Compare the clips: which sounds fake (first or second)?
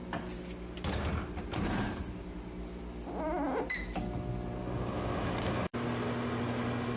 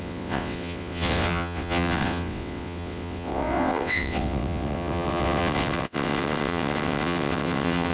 second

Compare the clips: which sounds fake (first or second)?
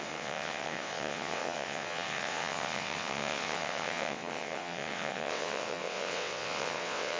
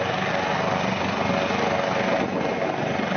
first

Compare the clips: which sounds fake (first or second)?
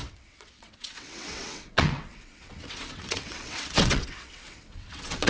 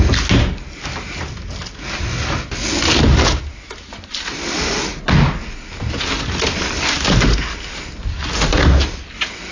first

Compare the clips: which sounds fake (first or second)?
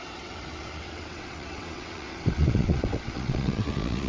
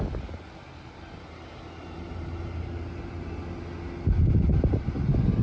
first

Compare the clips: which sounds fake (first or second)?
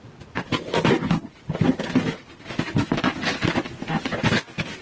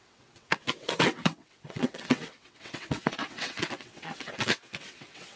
second